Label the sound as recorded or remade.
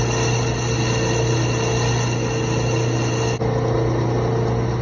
recorded